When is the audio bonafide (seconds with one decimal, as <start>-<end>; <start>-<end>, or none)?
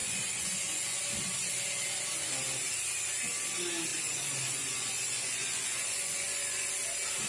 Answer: 1.0-3.9; 6.7-7.3